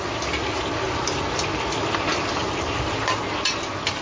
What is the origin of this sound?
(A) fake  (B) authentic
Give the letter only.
B